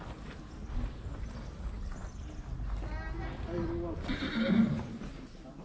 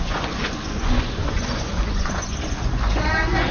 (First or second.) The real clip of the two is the first